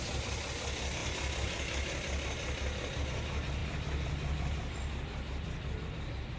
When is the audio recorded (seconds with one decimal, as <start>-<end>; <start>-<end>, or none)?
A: 0.0-6.4